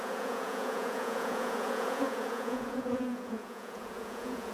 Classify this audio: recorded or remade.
remade